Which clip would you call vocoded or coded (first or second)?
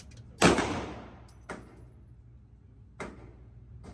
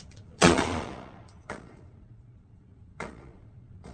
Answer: second